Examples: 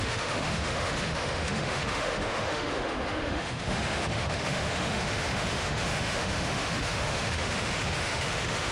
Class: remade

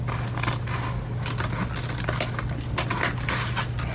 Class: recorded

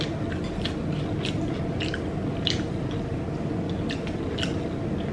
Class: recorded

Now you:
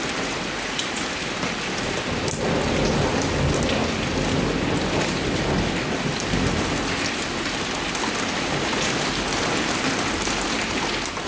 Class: recorded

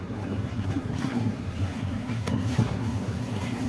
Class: remade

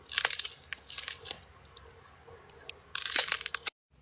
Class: recorded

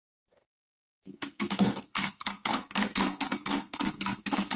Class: remade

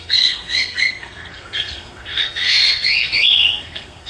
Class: remade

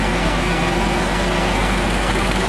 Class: remade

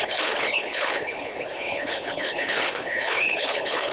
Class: remade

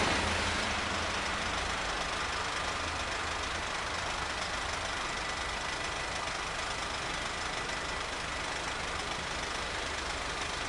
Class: recorded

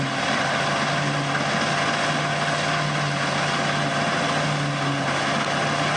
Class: recorded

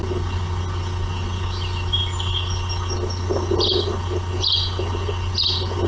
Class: recorded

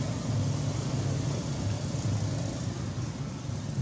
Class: recorded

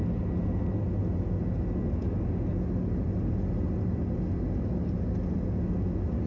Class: recorded